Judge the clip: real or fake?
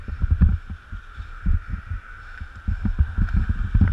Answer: real